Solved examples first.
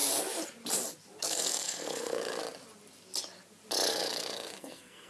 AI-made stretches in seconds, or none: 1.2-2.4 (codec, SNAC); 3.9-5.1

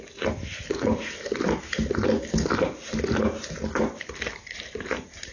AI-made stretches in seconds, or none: none

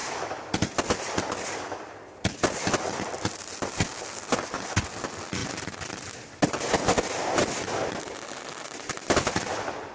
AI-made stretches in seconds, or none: none

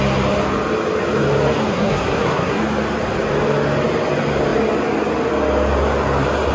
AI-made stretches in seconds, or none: 1.7-2.6 (codec, SNAC)

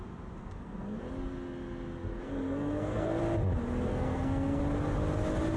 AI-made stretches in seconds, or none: 0.4-1.0 (codec, SNAC); 2.1-3.2; 3.9-4.6

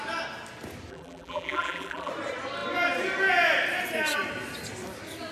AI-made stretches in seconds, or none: 0.9-2.1 (vocoder, BigVGAN v2)

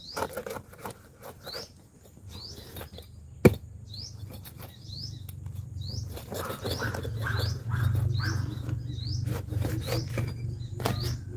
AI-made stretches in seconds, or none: none